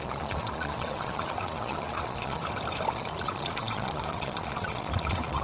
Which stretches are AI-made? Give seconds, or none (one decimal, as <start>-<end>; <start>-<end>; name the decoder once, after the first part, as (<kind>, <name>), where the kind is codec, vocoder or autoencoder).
0.0-2.4 (vocoder, Vocos); 2.9-5.4